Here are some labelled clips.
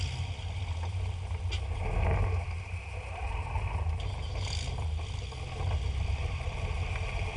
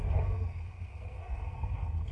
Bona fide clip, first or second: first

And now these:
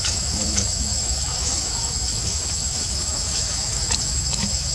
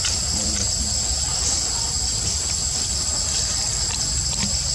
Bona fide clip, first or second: second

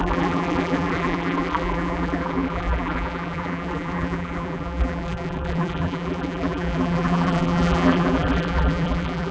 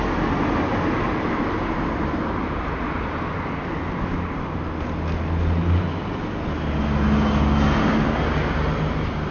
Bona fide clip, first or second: second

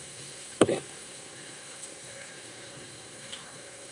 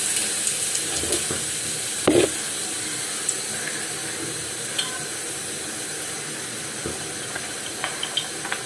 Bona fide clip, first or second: second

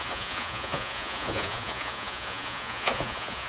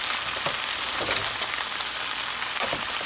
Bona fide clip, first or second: second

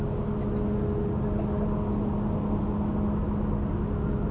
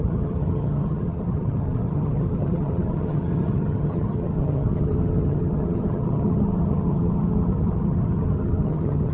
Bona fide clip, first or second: first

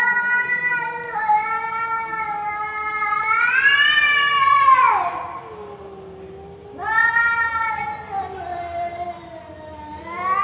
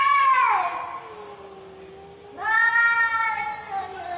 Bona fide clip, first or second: second